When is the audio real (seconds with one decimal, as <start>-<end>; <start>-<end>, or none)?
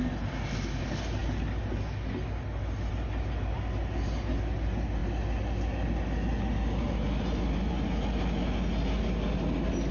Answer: 0.0-9.9